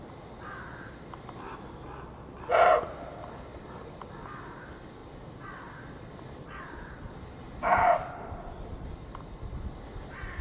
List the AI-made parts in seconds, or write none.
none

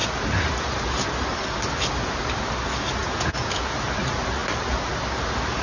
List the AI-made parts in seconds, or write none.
3.0-3.6 (vocoder, Vocos)

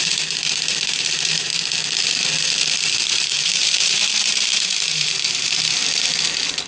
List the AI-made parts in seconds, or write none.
0.0-1.5 (vocoder, BigVGAN v2); 3.1-5.8

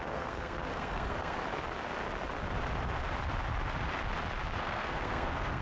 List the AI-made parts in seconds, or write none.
0.0-1.5 (codec, SNAC); 4.6-5.6